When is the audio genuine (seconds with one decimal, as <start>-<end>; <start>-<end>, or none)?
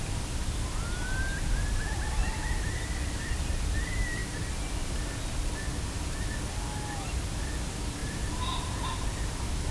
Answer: 0.0-2.2; 3.5-8.0; 9.0-9.7